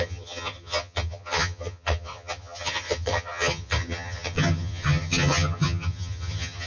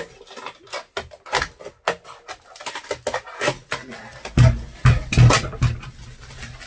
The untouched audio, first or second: second